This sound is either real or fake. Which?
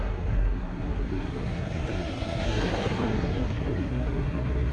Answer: fake